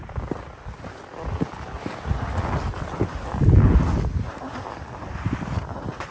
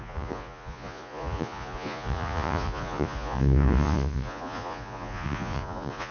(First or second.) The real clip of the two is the first